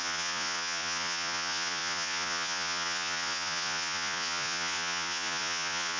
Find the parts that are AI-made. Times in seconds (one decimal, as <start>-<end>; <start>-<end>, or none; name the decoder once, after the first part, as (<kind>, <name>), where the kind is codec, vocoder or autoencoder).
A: 0.0-6.0 (vocoder, Vocos)